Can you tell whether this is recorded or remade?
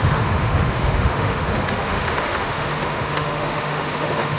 remade